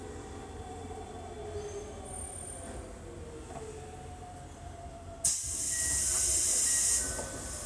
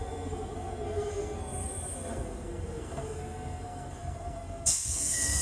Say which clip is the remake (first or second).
second